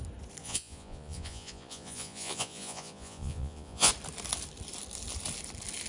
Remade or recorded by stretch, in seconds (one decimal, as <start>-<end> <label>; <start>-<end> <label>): 0.0-0.4 recorded; 0.4-3.9 remade; 3.9-5.9 recorded